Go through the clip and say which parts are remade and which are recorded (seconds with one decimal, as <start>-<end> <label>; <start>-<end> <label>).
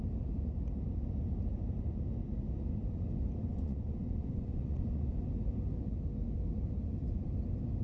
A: 0.0-3.5 recorded; 3.5-5.1 remade; 5.1-7.8 recorded